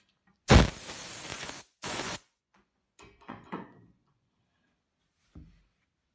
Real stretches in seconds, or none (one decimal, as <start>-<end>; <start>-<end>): 0.0-1.3; 4.3-6.1